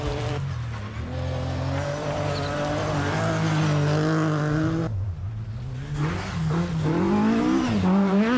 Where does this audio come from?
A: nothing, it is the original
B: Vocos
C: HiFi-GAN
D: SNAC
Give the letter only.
A